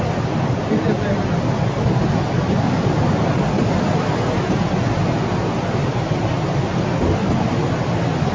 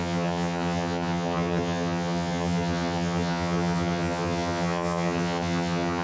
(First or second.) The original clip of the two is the first